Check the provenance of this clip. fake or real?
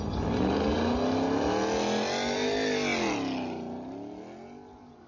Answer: real